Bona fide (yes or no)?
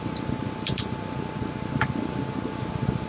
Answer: yes